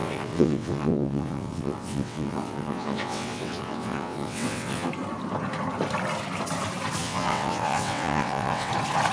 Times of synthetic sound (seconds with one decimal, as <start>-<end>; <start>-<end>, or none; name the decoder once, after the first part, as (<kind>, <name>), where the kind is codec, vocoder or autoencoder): 0.0-4.9 (vocoder, WaveNeXt); 7.0-8.7